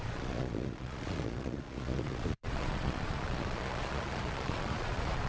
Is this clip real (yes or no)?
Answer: no